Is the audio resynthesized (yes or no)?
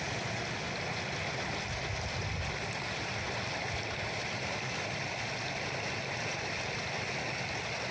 no